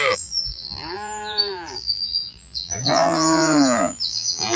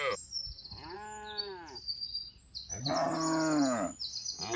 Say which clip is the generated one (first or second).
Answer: first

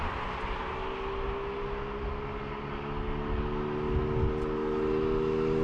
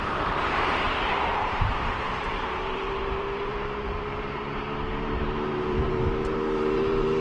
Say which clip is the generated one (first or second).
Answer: second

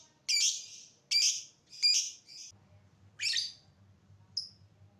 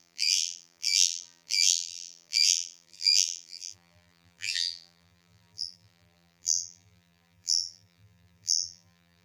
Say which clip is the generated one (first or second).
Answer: second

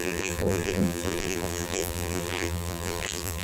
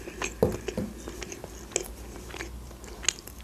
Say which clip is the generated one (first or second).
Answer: first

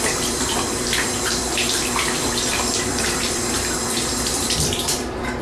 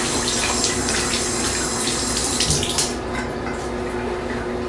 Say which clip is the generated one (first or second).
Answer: first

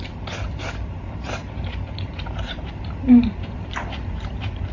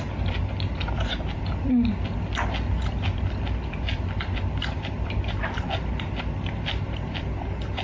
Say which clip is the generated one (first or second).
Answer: first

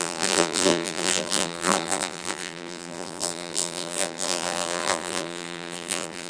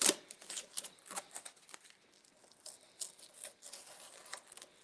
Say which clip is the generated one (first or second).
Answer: first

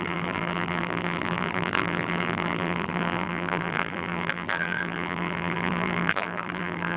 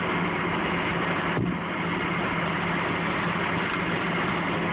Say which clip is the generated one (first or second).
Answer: first